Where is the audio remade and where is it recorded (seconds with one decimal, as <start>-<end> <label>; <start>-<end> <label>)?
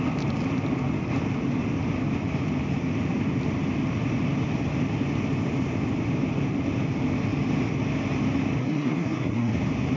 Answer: 0.0-8.6 recorded; 8.6-9.6 remade; 9.6-10.0 recorded